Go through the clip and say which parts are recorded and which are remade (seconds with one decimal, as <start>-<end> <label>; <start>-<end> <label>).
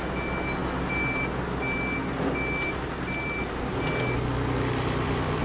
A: 0.0-5.4 recorded